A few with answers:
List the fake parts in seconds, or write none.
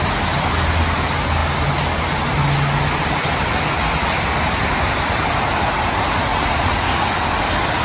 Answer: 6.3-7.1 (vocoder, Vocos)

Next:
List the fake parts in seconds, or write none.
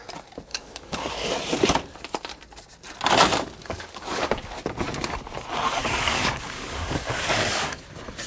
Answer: 0.5-1.3 (codec, DAC); 3.6-4.5; 5.8-7.8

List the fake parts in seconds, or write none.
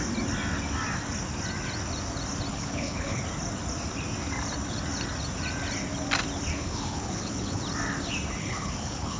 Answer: 2.5-3.2 (codec, HILCodec); 6.5-7.6; 8.4-9.2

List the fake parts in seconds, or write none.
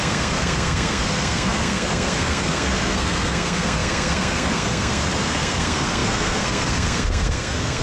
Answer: 0.0-7.8 (codec, SNAC)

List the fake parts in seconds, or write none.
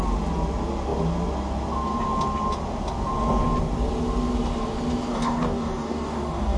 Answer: 5.1-6.6 (codec, DAC)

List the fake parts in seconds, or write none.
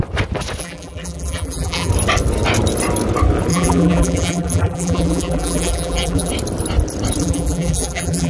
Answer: 0.6-1.9 (vocoder, BigVGAN v2); 3.5-6.3; 7.2-8.3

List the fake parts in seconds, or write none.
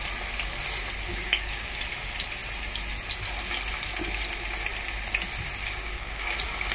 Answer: 1.1-1.8 (codec, DAC); 5.6-6.2